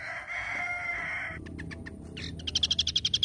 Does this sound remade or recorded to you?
recorded